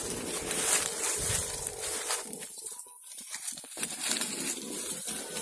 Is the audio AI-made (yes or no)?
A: yes